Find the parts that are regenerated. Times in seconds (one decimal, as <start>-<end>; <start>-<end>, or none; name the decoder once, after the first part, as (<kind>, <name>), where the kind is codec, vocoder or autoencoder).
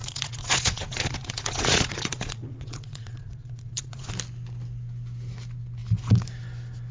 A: 0.0-4.1 (vocoder, Vocos)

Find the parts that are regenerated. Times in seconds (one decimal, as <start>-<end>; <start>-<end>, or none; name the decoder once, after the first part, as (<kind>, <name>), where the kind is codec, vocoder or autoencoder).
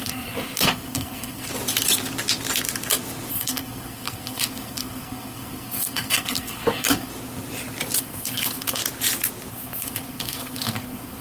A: 0.0-1.5 (codec, SNAC); 3.3-7.1; 8.0-8.8; 9.5-11.2